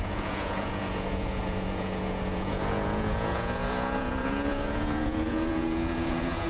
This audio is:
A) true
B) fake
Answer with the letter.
B